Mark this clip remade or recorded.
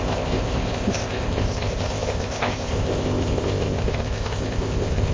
remade